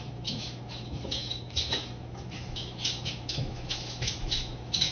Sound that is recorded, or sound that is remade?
remade